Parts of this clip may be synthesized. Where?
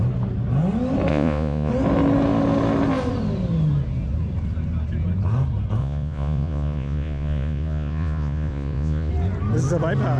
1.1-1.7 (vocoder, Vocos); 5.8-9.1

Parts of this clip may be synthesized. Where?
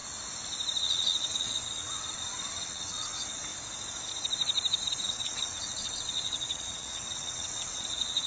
0.8-3.5 (vocoder, WaveNeXt); 5.0-8.3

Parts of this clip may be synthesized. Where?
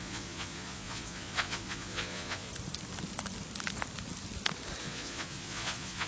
0.0-2.5 (vocoder, Vocos); 4.8-6.1